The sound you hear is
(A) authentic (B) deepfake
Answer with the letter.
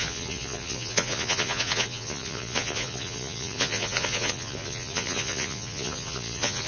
B